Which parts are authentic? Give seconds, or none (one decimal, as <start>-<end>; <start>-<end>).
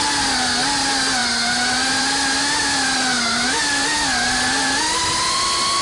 0.0-5.8